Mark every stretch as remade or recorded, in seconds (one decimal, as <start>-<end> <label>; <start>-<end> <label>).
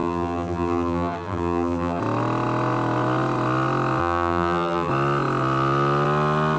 0.0-2.0 remade; 2.0-4.0 recorded; 4.0-4.9 remade; 4.9-6.6 recorded